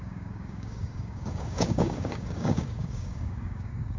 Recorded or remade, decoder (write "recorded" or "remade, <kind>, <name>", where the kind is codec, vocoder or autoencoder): remade, codec, DAC